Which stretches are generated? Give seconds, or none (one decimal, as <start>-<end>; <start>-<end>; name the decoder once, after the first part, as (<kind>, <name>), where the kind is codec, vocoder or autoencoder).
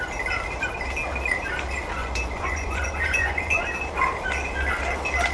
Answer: 2.0-3.6 (vocoder, Vocos)